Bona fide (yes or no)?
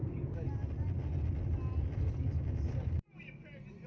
yes